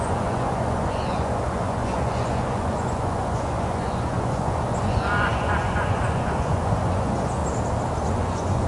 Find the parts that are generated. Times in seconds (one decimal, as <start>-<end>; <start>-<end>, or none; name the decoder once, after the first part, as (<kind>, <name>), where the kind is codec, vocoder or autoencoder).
0.0-7.4 (vocoder, Vocos); 8.1-8.7